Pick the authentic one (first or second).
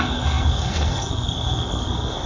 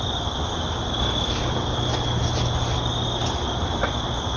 second